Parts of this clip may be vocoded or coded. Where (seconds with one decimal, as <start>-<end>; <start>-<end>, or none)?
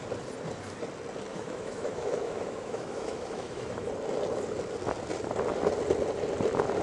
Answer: 1.3-3.9